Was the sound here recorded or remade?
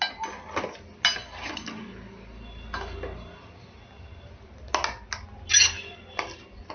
recorded